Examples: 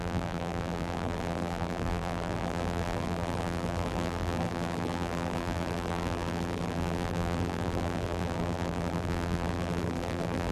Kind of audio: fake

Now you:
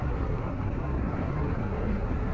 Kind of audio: fake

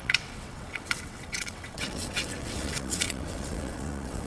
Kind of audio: fake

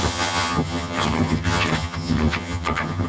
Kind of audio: fake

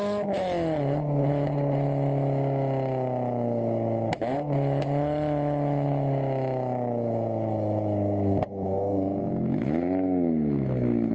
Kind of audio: fake